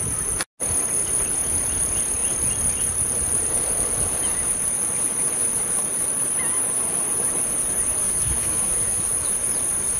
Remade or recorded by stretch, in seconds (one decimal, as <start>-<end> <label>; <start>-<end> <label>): 0.0-8.0 recorded; 8.0-9.0 remade; 9.0-10.0 recorded